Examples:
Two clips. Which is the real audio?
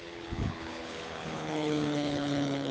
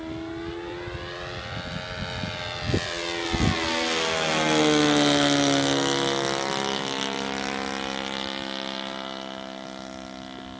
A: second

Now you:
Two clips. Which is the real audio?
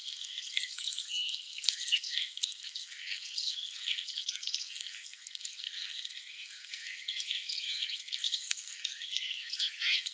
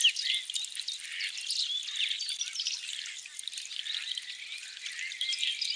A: second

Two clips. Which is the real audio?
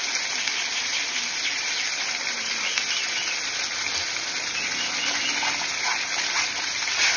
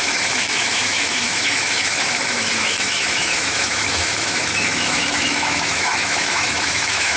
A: first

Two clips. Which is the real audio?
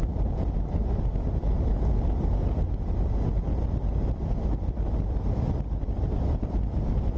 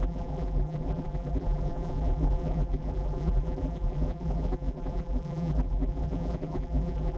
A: first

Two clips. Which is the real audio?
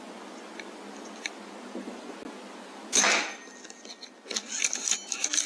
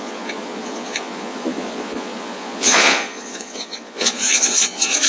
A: first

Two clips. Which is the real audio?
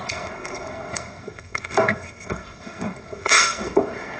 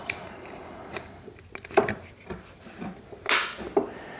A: second